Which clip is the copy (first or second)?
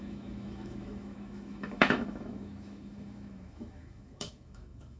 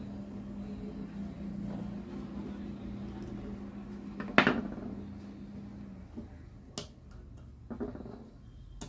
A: first